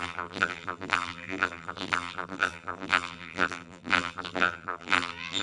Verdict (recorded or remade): remade